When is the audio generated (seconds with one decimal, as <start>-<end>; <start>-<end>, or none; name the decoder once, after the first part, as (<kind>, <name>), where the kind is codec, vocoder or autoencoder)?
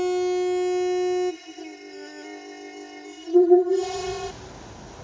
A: 1.3-4.3 (codec, ZipCodec)